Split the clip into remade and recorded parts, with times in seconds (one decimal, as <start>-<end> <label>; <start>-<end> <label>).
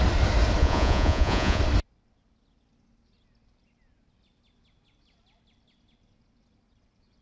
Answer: 0.0-0.6 recorded; 0.6-1.6 remade; 1.6-7.2 recorded